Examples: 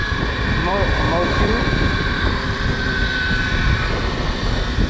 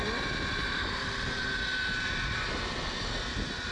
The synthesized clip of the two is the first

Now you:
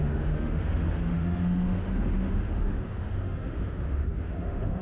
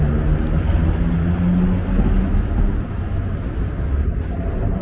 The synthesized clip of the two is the first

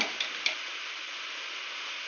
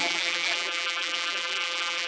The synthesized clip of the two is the second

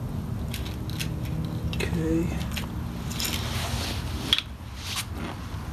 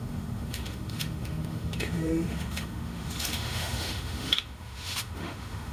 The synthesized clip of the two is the second